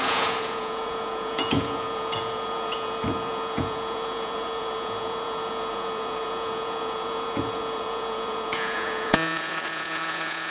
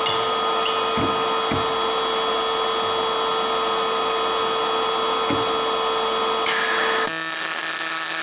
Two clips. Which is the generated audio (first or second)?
first